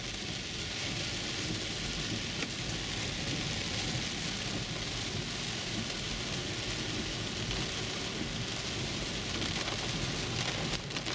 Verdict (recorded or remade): recorded